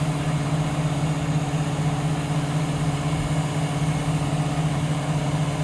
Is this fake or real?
real